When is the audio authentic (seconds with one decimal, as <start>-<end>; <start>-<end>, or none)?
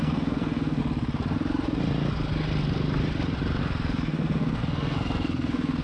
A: 0.8-3.6